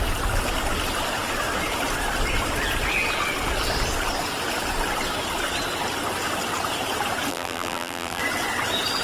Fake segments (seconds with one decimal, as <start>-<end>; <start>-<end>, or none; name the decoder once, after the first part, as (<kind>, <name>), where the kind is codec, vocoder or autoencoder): 7.3-8.2 (vocoder, BigVGAN v2)